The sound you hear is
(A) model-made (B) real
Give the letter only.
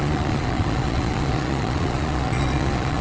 A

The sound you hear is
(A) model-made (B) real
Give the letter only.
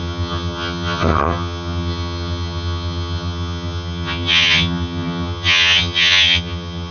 A